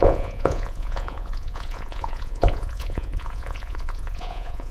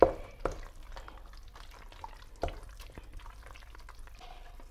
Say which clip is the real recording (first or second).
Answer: second